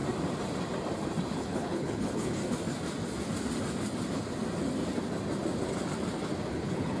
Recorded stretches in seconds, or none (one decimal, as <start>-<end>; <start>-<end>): 0.0-1.3; 2.4-6.5